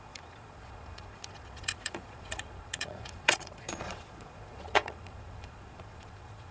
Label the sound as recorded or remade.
remade